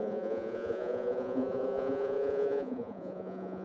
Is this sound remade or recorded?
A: remade